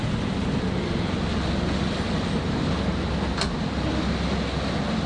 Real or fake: real